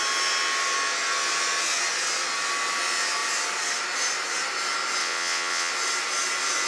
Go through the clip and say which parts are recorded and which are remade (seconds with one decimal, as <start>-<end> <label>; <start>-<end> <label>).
0.0-5.0 recorded; 5.0-5.7 remade; 5.7-6.7 recorded

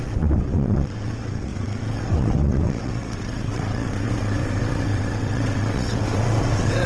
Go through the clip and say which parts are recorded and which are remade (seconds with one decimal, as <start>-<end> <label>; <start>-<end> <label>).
0.0-6.9 remade

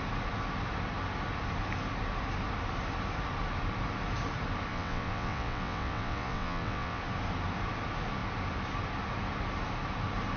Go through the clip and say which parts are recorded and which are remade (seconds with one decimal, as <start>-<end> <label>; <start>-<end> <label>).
0.0-4.7 recorded; 4.7-7.0 remade; 7.0-10.4 recorded

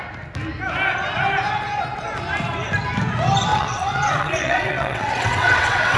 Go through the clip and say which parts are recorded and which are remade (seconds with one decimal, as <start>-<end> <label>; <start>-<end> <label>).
0.0-3.5 recorded; 3.5-6.0 remade

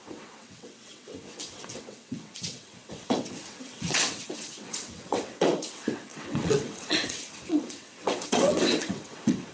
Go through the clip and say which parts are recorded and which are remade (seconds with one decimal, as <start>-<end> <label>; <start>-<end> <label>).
0.0-9.5 remade

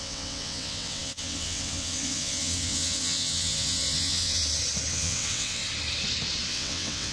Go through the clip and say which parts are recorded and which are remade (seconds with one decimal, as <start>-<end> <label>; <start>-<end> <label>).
0.0-4.4 remade; 4.4-4.9 recorded; 4.9-5.6 remade; 5.6-6.5 recorded; 6.5-7.1 remade

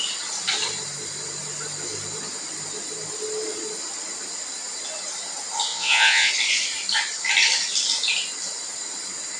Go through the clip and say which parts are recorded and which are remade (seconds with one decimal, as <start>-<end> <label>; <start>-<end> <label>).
0.0-5.7 recorded; 5.7-6.3 remade; 6.3-9.4 recorded

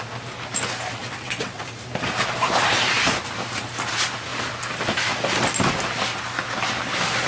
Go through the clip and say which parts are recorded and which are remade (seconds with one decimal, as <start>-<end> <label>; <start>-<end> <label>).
0.0-1.0 recorded; 1.0-1.6 remade; 1.6-7.3 recorded